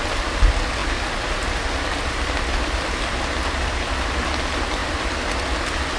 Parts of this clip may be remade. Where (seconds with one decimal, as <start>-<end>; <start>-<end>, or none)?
none